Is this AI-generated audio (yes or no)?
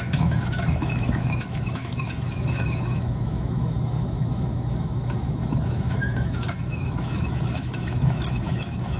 yes